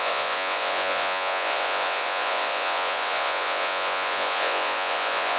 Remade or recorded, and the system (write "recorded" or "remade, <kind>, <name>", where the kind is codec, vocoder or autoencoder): remade, vocoder, Vocos